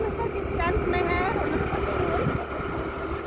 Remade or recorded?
recorded